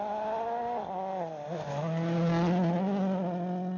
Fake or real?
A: real